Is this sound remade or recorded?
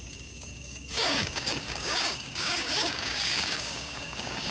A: remade